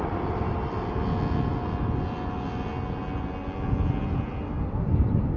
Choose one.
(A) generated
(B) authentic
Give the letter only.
B